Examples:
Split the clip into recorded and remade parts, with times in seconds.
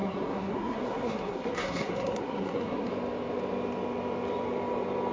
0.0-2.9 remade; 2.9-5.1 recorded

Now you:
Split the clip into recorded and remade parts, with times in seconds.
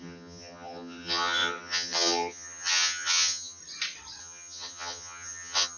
0.0-3.6 remade; 3.6-4.2 recorded; 4.2-5.8 remade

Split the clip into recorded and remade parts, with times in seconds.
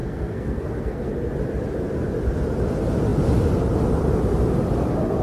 0.0-1.1 remade; 1.1-5.2 recorded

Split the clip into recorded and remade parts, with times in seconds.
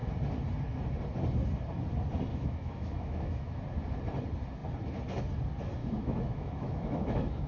0.0-2.3 recorded; 2.3-3.6 remade; 3.6-5.8 recorded; 5.8-7.5 remade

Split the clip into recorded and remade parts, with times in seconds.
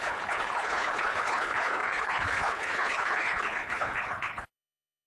0.0-5.1 remade